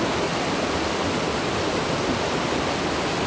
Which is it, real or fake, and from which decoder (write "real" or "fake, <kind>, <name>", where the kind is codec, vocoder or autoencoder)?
real